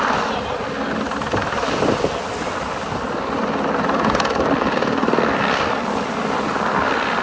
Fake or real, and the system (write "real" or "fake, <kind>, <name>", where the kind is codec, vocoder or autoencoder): real